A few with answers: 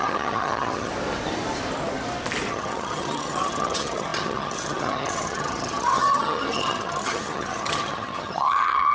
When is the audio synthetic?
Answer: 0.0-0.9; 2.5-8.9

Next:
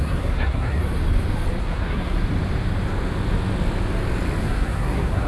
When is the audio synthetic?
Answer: 0.0-0.8; 1.6-2.2; 4.4-5.3

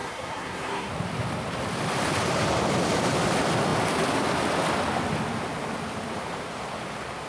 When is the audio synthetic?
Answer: 0.0-0.9

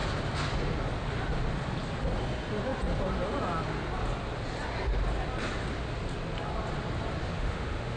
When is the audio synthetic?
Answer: 7.2-8.0

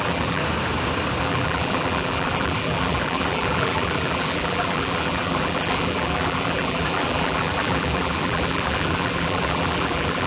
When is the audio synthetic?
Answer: 0.0-0.4; 1.2-10.3

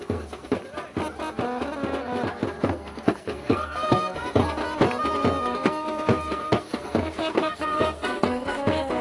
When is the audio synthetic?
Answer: 0.0-0.6; 2.3-4.6; 5.4-9.0

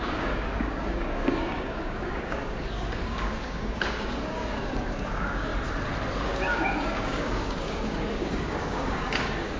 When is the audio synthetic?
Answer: 0.0-5.5; 6.2-9.6

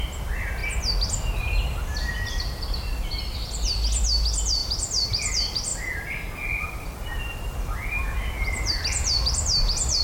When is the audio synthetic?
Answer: 0.0-0.6; 1.4-5.7; 6.6-10.0